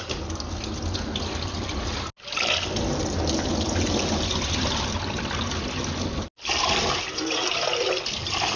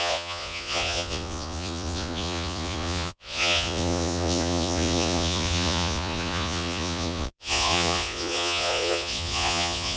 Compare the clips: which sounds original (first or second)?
first